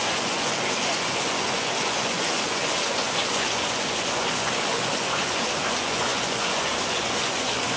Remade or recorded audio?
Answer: remade